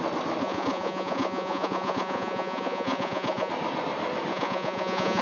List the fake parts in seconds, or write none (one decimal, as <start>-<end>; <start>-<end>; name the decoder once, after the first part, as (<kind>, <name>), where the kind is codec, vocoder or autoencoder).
0.4-3.5 (vocoder, Vocos); 4.3-5.2